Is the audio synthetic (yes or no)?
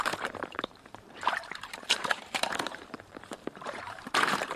yes